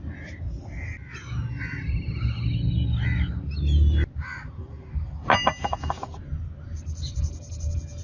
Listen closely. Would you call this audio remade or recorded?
recorded